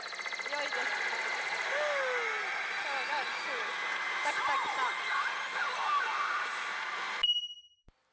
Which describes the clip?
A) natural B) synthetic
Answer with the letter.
A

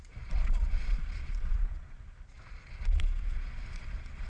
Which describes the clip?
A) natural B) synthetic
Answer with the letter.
B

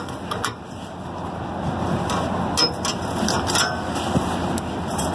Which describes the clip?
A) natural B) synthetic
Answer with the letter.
A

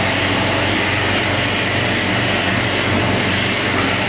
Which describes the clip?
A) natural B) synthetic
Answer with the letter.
A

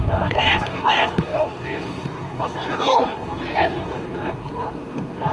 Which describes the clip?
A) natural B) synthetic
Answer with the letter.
B